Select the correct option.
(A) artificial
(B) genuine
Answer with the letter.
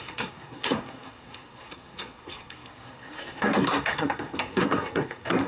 A